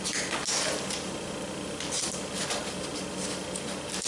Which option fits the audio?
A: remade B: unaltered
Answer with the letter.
B